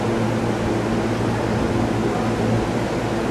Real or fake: real